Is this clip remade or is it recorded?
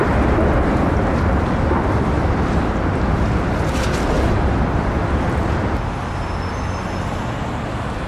recorded